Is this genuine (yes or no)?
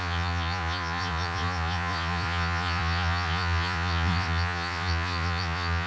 no